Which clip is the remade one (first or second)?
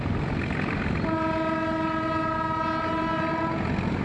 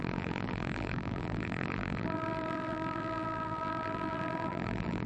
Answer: second